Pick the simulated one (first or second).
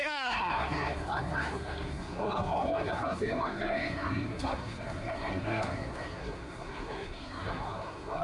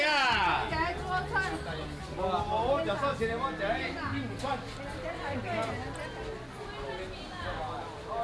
first